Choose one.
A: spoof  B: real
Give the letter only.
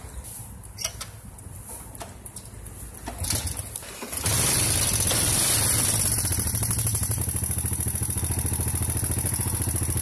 B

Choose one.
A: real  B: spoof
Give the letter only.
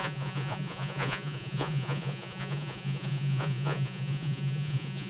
B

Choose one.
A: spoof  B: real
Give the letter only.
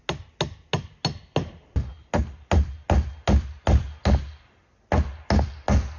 B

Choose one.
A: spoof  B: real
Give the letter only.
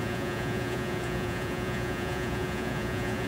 A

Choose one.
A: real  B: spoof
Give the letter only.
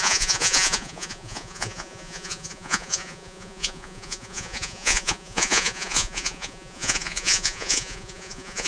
B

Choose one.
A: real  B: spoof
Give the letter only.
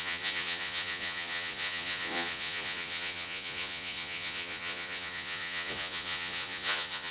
B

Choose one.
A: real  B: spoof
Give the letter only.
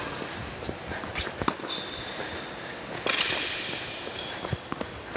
A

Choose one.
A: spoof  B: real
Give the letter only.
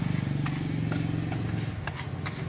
B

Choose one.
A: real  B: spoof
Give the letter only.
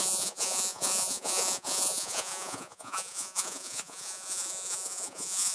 B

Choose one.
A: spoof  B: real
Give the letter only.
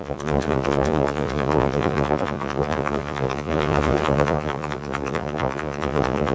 A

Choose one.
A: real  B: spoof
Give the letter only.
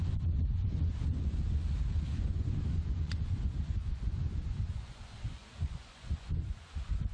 B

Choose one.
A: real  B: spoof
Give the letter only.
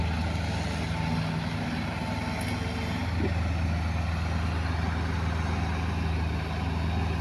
A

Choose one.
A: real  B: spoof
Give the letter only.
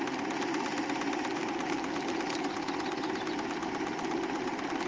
A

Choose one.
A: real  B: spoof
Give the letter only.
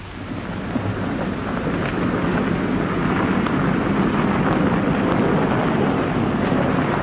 A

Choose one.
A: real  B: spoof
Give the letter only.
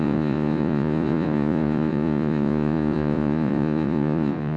B